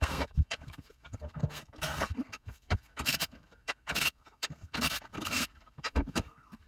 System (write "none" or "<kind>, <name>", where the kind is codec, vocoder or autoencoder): codec, SNAC